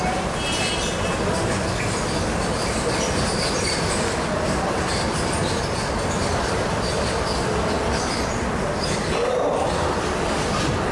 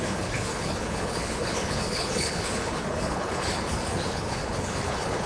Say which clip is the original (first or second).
first